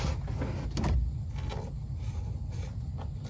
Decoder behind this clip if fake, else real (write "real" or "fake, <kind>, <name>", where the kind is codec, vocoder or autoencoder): real